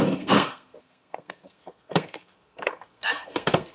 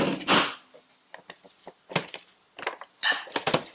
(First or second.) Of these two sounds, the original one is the second